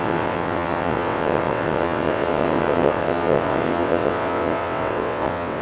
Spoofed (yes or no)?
yes